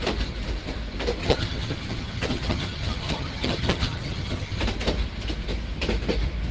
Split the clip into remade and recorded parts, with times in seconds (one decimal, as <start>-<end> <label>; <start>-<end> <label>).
0.0-1.2 recorded; 1.2-4.6 remade; 4.6-6.5 recorded